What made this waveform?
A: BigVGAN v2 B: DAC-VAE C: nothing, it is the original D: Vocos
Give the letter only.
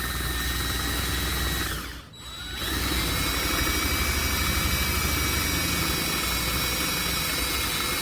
C